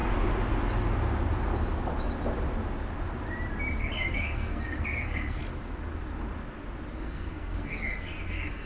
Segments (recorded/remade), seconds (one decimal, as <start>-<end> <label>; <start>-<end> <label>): 0.0-3.8 recorded; 3.8-5.4 remade; 5.4-6.9 recorded; 6.9-8.7 remade